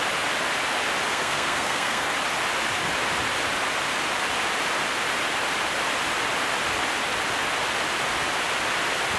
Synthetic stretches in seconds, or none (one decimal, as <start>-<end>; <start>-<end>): 1.1-2.1